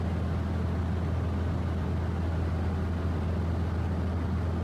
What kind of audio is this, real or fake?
real